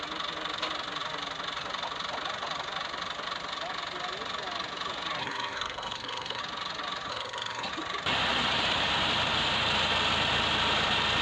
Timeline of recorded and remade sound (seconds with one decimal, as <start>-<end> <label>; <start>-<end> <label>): 0.0-5.2 recorded; 5.2-6.4 remade; 6.4-7.1 recorded; 7.1-7.7 remade; 7.7-11.2 recorded